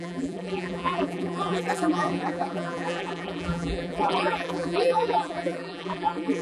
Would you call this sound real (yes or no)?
no